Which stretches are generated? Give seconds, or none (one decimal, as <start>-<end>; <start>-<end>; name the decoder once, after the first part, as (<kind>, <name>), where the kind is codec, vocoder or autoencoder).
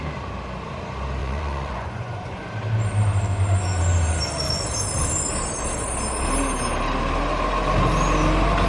1.2-2.5 (vocoder, Vocos)